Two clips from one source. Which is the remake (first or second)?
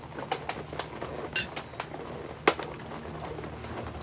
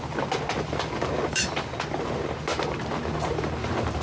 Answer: second